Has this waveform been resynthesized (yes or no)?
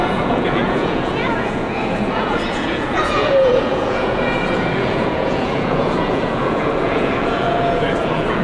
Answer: yes